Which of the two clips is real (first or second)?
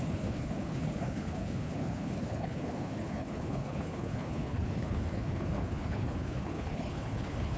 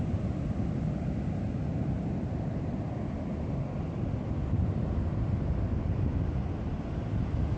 second